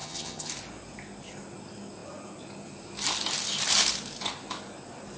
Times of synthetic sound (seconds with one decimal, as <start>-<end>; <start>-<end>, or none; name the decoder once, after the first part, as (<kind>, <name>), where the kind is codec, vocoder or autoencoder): 0.0-0.5 (vocoder, HiFi-GAN)